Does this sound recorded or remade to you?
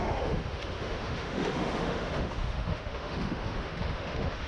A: remade